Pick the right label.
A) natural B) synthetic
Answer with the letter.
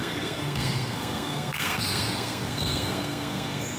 B